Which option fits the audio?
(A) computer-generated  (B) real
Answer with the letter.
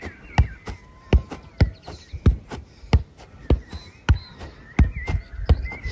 B